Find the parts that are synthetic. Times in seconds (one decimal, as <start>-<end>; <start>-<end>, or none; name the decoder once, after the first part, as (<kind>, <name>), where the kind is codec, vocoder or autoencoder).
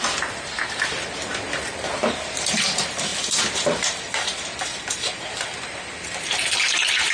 0.0-1.3 (vocoder, BigVGAN v2); 2.0-7.1